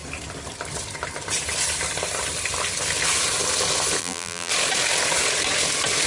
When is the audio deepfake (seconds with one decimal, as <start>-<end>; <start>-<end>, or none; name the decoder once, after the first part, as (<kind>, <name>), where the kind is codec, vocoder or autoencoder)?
4.0-4.5 (vocoder, BigVGAN v2)